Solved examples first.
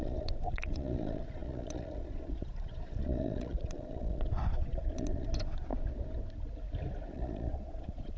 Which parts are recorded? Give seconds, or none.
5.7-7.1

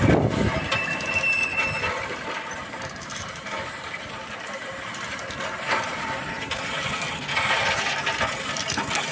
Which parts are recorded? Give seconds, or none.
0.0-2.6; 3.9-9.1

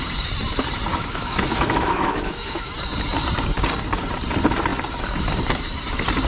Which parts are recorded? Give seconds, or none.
0.0-0.9; 2.7-6.3

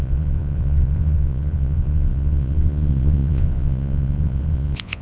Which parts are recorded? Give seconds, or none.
none

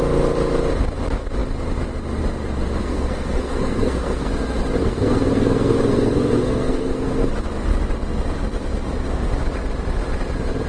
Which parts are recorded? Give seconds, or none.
0.0-2.8; 4.3-4.8; 7.3-10.7

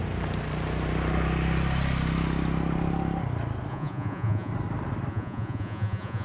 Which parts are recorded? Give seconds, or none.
0.0-3.7; 4.5-5.1

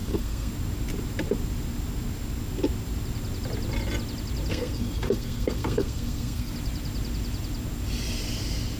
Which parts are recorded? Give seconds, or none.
0.5-4.5; 6.5-8.8

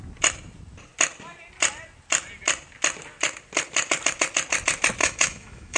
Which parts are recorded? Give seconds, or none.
0.0-5.0